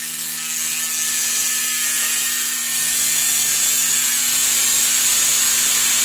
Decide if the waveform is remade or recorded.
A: recorded